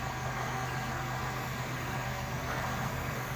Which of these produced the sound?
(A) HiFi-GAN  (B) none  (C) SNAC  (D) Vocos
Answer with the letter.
C